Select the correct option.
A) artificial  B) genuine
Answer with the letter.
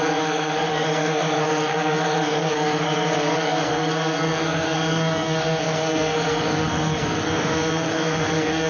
A